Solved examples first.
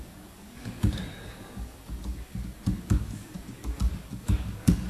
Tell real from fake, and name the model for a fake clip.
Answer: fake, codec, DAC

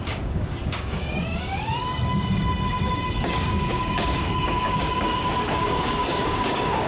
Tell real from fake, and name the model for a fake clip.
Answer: fake, codec, DAC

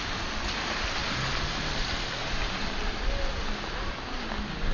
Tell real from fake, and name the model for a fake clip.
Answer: real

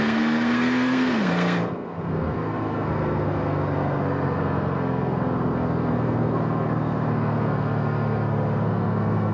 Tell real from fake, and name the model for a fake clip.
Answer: fake, codec, SNAC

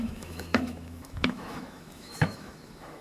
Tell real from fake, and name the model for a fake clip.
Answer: fake, autoencoder, DAC-VAE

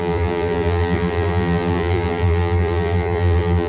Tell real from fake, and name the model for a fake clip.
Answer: fake, vocoder, BigVGAN v2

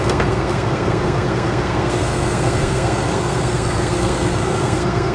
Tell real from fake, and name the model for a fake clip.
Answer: fake, codec, SNAC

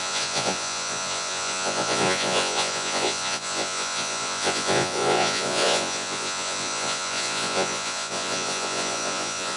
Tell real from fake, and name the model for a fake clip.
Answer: fake, vocoder, Vocos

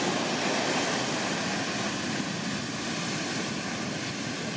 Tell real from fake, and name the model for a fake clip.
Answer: real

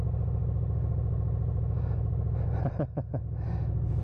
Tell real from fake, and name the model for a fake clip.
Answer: real